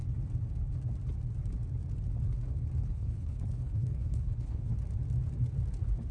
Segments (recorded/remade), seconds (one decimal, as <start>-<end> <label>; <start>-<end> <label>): 0.0-2.8 recorded; 2.8-4.7 remade; 4.7-6.1 recorded